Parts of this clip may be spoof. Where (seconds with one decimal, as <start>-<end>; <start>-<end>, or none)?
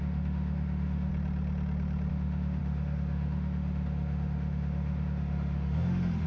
0.0-1.1; 2.1-6.3